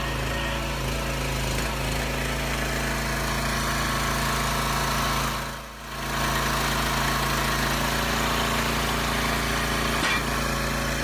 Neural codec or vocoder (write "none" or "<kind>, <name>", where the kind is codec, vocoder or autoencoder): none